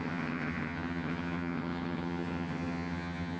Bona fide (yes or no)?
no